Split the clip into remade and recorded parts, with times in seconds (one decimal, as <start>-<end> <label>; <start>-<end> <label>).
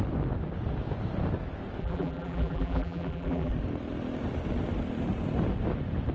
0.0-1.8 recorded; 1.8-3.5 remade; 3.5-6.1 recorded